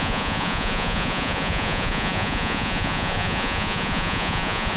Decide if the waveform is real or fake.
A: fake